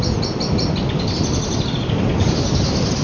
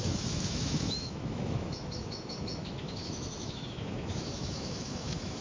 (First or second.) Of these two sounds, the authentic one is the first